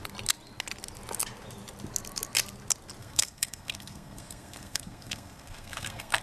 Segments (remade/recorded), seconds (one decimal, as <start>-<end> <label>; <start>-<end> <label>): 0.0-3.0 recorded; 3.0-6.2 remade